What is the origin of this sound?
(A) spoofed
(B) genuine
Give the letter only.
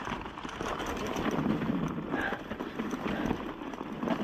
B